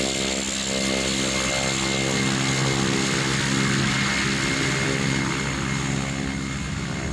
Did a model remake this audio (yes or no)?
no